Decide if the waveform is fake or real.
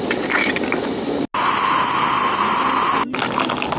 real